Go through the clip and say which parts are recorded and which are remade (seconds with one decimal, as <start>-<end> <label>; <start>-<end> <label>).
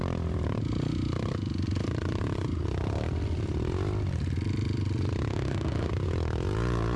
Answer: 0.0-5.3 recorded; 5.3-5.9 remade; 5.9-7.0 recorded